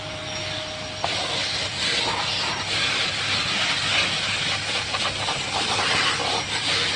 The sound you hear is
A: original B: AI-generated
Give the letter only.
B